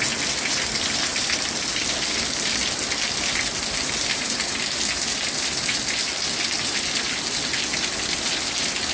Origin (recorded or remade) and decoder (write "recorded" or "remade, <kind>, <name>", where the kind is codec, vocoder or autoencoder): recorded